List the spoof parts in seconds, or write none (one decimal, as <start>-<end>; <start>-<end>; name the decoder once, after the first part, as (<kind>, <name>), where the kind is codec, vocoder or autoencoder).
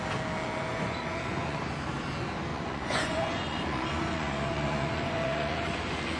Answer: 0.7-1.6 (vocoder, Vocos); 2.5-6.2